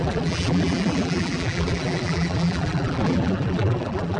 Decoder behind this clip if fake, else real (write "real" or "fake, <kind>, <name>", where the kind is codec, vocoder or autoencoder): fake, vocoder, BigVGAN v2